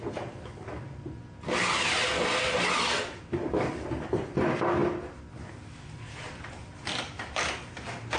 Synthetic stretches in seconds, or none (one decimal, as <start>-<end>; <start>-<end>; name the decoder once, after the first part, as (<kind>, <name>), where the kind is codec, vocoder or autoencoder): none